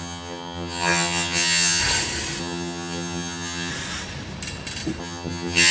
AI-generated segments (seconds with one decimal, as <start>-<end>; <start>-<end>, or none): 0.0-1.8; 2.4-3.7; 5.0-5.7